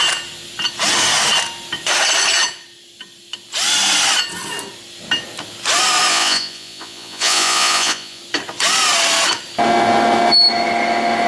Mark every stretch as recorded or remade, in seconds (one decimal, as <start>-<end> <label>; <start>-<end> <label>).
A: 0.0-6.1 recorded; 6.1-8.2 remade; 8.2-11.3 recorded